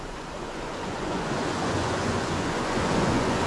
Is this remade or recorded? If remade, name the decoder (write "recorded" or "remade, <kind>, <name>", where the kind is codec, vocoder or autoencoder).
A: remade, vocoder, Vocos